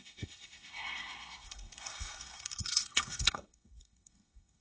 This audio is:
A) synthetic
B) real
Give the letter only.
A